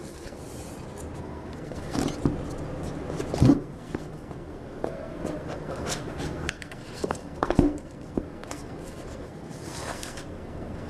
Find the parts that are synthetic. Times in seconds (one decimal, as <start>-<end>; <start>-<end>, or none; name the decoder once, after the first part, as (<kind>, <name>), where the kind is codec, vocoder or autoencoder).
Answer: 0.0-0.4 (codec, SNAC); 1.2-2.0; 3.4-10.9